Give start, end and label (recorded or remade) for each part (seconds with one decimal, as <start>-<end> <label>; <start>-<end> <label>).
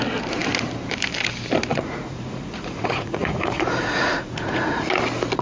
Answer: 0.0-1.7 recorded; 1.7-4.9 remade; 4.9-5.4 recorded